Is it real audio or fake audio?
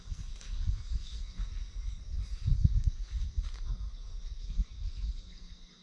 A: fake